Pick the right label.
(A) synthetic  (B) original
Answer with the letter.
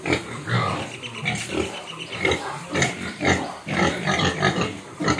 B